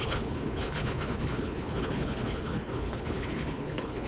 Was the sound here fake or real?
fake